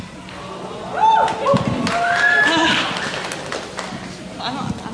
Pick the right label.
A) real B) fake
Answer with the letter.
A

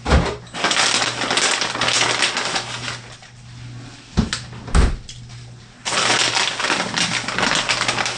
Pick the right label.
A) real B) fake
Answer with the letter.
A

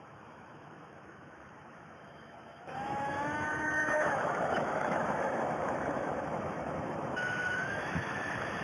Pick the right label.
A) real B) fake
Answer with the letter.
B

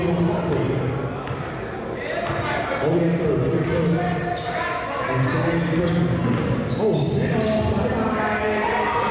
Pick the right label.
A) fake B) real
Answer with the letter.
B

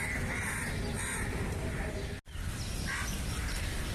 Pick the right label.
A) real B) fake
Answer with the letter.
A